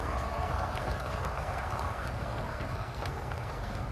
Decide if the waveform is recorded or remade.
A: remade